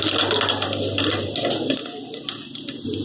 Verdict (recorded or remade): recorded